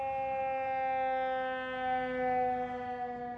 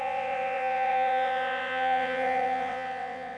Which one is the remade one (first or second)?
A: second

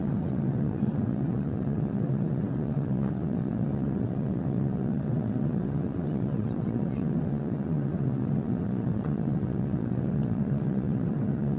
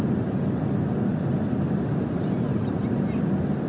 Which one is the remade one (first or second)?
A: first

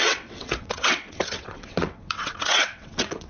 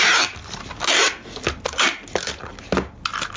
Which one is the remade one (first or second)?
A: first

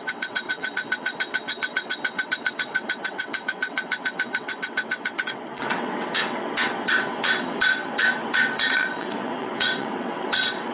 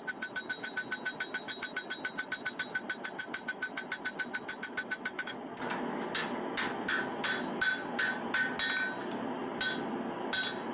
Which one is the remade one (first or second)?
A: first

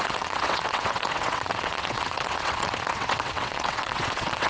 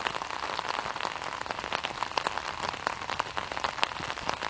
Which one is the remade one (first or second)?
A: first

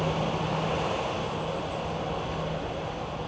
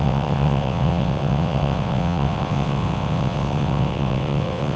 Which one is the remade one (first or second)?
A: second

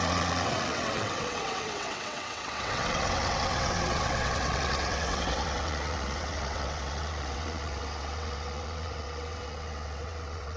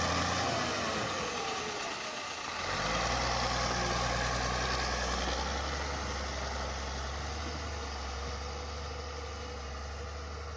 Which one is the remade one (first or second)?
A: first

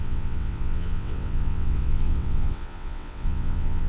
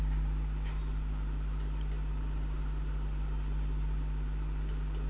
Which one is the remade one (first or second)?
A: first